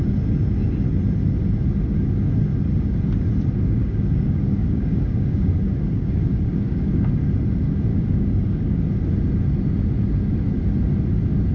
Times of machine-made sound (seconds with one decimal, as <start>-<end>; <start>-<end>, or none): 3.8-7.2; 7.9-8.8